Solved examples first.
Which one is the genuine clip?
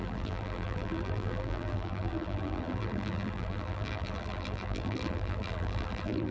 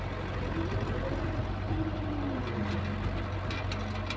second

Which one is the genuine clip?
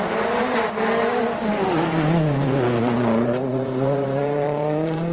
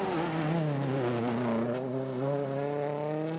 second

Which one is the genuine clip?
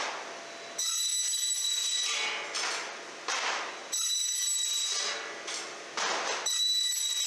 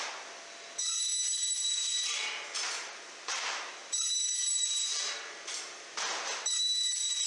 first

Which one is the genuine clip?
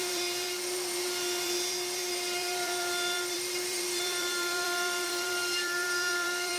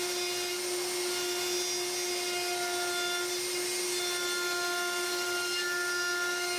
second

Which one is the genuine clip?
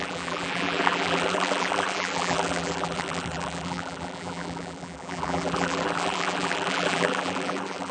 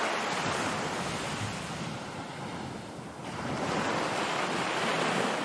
second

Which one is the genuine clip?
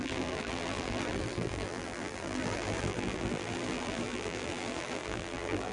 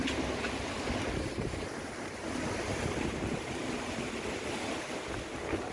second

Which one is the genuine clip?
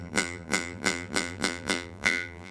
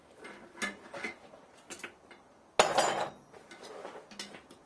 second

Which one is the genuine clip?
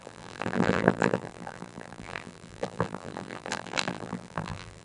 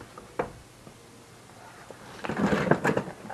second